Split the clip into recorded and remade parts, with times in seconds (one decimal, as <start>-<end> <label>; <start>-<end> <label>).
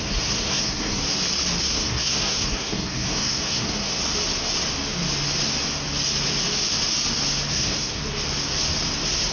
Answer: 0.0-1.0 remade; 1.0-1.6 recorded; 1.6-4.0 remade; 4.0-7.5 recorded; 7.5-8.0 remade; 8.0-9.3 recorded